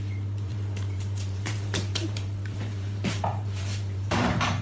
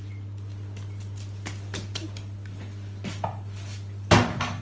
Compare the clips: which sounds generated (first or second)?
first